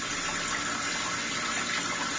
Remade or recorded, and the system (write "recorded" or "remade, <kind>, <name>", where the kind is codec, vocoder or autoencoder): recorded